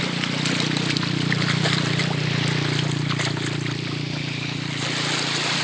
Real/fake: real